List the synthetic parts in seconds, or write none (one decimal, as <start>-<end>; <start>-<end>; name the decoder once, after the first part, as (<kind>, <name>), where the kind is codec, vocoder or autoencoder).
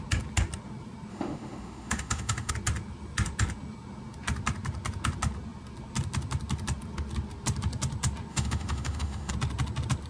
1.1-2.5 (autoencoder, DAC-VAE); 8.3-9.3